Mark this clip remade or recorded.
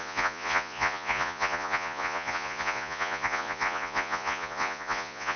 remade